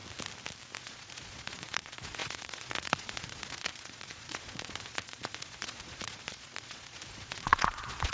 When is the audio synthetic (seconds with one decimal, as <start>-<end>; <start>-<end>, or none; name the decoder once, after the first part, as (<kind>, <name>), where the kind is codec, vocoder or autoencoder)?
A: 0.8-8.1 (vocoder, Vocos)

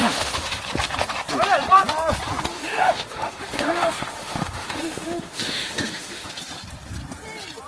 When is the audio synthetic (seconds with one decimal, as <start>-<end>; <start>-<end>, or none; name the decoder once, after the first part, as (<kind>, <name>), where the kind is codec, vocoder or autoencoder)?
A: 0.0-0.6 (autoencoder, DAC-VAE); 2.5-6.3

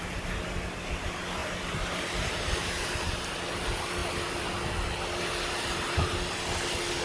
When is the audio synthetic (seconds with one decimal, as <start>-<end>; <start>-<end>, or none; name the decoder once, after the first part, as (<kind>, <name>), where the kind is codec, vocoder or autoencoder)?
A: 1.4-2.3 (vocoder, BigVGAN v2); 4.0-4.8

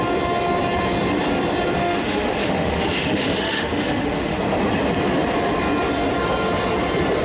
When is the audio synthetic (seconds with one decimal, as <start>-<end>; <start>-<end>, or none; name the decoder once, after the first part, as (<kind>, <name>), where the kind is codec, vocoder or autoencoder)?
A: 1.8-4.4 (autoencoder, DAC-VAE)